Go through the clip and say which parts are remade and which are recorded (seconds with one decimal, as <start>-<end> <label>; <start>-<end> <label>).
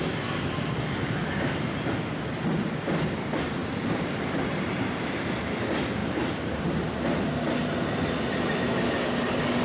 0.0-3.6 recorded; 3.6-5.3 remade; 5.3-6.0 recorded; 6.0-6.6 remade; 6.6-9.6 recorded